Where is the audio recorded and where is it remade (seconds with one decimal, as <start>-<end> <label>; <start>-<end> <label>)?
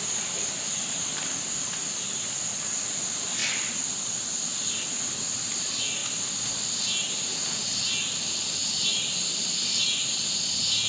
0.0-10.9 recorded